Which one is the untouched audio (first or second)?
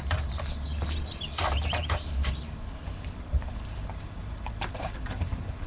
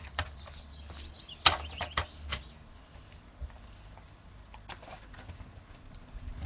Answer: second